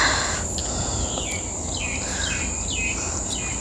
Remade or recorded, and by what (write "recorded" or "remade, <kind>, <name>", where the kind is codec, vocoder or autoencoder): recorded